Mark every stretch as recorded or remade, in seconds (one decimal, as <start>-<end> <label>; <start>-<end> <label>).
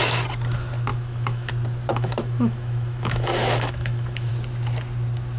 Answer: 0.0-0.9 recorded; 0.9-1.5 remade; 1.5-1.9 recorded; 1.9-4.3 remade; 4.3-5.4 recorded